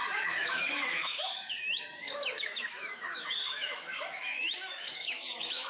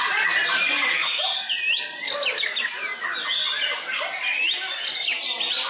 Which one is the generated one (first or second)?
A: first